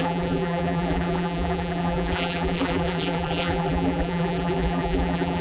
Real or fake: fake